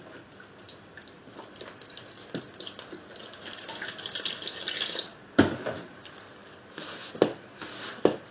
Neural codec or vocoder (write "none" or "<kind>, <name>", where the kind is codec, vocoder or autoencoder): none